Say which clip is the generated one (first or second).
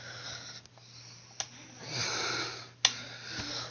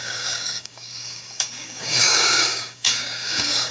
second